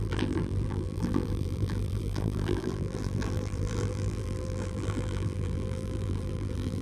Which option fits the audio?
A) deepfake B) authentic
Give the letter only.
A